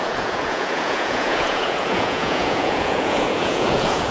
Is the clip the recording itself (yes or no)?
no